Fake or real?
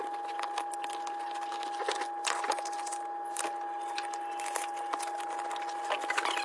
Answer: real